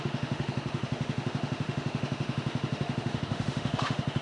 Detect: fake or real fake